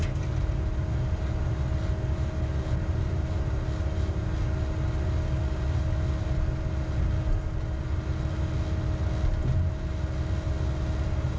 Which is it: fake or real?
real